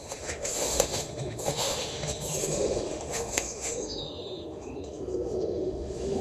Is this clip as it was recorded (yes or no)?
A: no